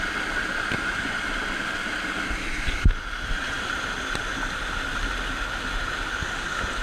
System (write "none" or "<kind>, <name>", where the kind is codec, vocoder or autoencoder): none